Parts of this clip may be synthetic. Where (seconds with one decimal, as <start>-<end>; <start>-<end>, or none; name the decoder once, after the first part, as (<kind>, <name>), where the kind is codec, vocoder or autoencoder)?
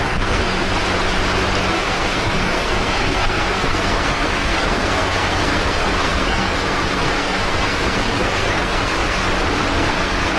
0.0-0.7 (codec, SNAC); 1.7-9.2; 9.7-10.4